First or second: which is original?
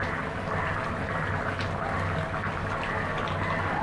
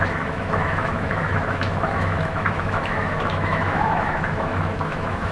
first